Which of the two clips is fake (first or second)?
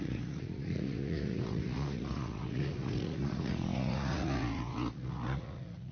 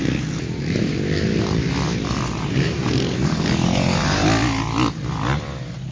first